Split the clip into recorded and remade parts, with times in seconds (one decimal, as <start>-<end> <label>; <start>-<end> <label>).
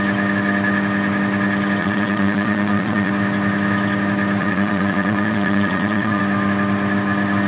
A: 0.0-1.8 recorded; 1.8-3.1 remade; 3.1-4.4 recorded; 4.4-6.2 remade; 6.2-7.5 recorded